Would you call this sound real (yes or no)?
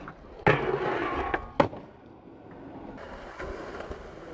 yes